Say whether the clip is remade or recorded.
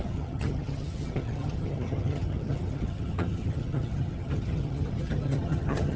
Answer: remade